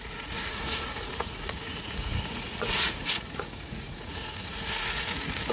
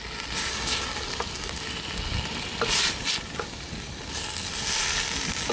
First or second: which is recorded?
second